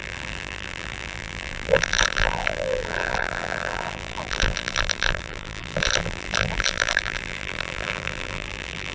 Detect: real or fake fake